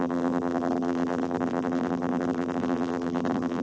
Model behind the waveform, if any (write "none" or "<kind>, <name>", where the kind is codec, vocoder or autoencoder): vocoder, BigVGAN v2